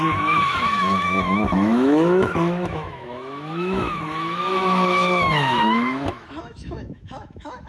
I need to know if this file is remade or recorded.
remade